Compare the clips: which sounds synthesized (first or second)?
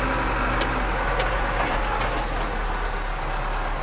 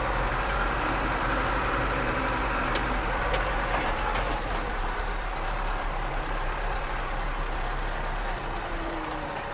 second